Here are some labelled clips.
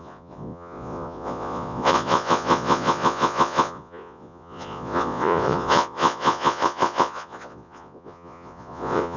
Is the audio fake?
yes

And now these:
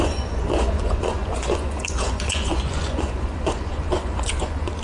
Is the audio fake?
yes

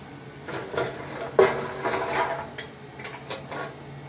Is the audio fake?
no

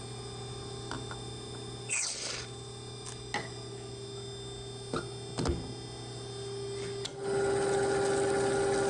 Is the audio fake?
no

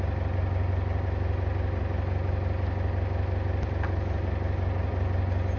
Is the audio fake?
no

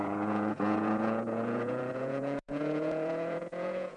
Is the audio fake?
yes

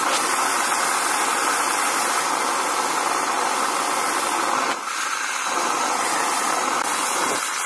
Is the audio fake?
no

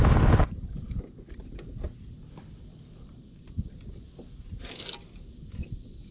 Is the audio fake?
no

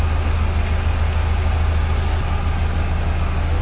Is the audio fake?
no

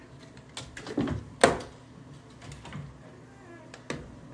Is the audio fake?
no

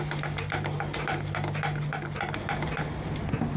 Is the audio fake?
no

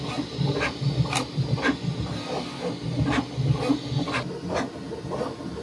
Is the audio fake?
no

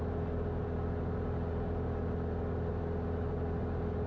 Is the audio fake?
no